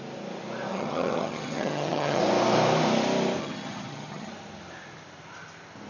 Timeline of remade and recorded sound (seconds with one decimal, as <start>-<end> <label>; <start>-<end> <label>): 0.0-0.7 recorded; 0.7-2.2 remade; 2.2-3.4 recorded; 3.4-4.3 remade; 4.3-5.9 recorded